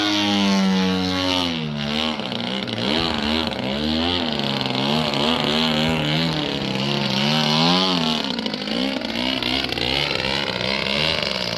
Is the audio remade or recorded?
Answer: recorded